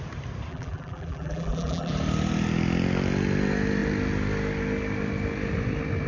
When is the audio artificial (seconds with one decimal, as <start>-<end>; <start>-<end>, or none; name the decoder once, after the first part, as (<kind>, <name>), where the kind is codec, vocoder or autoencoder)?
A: 0.5-1.9 (vocoder, BigVGAN v2)